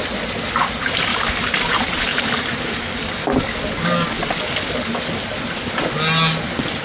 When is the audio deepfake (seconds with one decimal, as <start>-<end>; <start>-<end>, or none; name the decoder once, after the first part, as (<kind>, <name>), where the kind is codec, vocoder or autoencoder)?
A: 1.1-1.7 (codec, DAC); 2.1-4.9